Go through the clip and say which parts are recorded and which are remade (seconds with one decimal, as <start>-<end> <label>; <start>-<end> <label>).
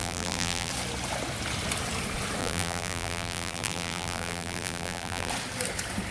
0.0-0.7 remade; 0.7-2.4 recorded; 2.4-5.3 remade; 5.3-6.1 recorded